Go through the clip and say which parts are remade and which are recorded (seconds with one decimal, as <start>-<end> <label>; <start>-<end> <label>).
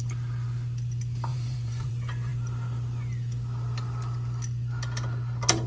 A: 0.0-1.3 recorded; 1.3-1.9 remade; 1.9-5.7 recorded